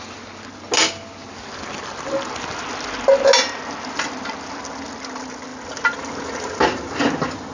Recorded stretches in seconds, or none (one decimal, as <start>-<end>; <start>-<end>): 0.0-7.5